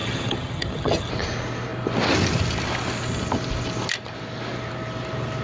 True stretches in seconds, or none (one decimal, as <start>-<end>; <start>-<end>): 1.1-5.4